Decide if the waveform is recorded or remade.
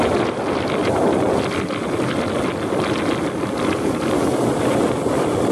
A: recorded